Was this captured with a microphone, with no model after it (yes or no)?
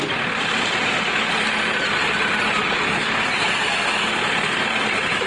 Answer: yes